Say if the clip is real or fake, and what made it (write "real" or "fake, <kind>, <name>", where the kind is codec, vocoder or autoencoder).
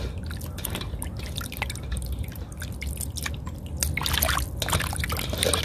real